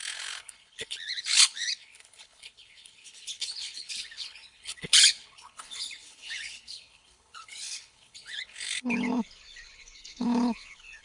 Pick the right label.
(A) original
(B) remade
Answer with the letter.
B